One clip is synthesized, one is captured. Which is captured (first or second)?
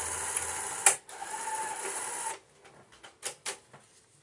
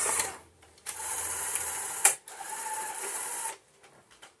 first